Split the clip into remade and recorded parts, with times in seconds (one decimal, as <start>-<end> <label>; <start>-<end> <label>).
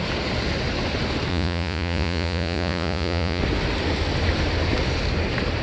0.0-1.3 recorded; 1.3-3.4 remade; 3.4-5.6 recorded